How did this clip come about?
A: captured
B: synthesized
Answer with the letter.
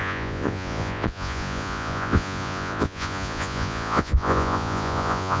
B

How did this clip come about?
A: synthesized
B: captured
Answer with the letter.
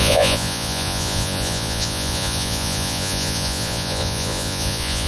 A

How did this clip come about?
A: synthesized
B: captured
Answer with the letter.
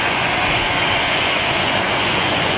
A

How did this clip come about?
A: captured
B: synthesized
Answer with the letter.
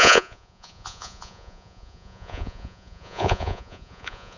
B